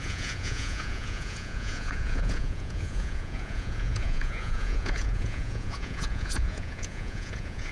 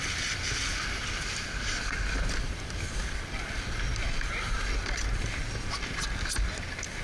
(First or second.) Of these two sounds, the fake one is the first